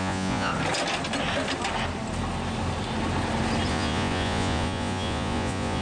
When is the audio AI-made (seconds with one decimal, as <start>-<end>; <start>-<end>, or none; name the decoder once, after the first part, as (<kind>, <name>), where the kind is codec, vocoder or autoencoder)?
0.0-0.5 (vocoder, Vocos); 3.7-5.8